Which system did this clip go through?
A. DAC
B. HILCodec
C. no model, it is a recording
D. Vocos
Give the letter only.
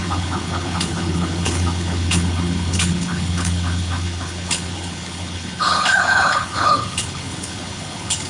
B